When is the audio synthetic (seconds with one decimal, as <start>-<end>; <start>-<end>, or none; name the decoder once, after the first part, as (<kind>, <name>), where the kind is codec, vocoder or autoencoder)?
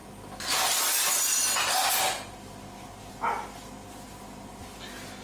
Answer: none